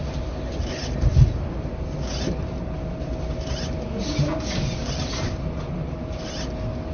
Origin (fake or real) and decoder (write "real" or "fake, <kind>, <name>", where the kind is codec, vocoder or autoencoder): real